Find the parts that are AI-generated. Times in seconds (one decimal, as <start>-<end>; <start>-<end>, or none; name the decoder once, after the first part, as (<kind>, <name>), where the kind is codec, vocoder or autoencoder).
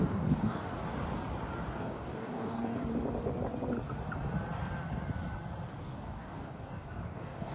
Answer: 0.0-0.8 (codec, DAC); 1.7-2.8; 5.8-7.5